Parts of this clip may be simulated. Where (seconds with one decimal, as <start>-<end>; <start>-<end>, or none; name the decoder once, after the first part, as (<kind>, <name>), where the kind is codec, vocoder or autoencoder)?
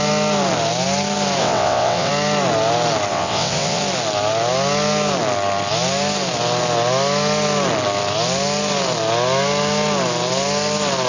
1.4-2.1 (vocoder, WaveNeXt); 3.1-3.8